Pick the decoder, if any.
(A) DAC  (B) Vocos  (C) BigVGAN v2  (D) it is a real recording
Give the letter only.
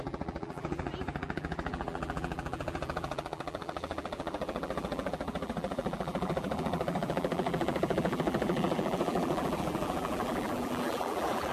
C